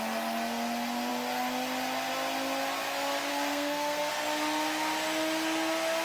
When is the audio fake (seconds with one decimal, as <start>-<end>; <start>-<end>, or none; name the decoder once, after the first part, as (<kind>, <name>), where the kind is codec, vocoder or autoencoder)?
3.3-4.1 (codec, SNAC)